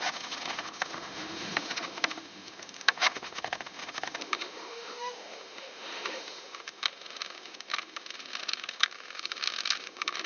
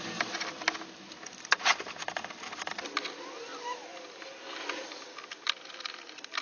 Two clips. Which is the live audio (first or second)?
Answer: second